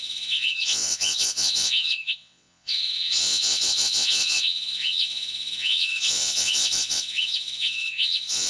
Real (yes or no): no